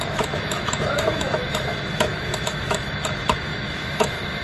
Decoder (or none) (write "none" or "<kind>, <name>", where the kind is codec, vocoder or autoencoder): autoencoder, DAC-VAE